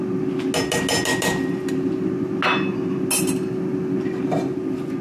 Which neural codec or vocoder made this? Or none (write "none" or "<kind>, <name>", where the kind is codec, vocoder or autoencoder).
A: none